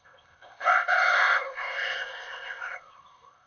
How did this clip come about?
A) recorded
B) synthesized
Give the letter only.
B